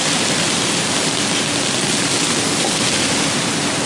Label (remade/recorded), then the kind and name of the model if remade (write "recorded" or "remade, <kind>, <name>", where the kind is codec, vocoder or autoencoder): recorded